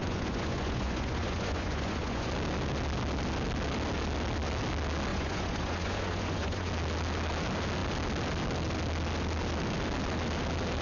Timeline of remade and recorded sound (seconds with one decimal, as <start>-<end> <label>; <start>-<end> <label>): 0.0-2.3 remade; 2.3-5.1 recorded; 5.1-6.7 remade; 6.7-10.8 recorded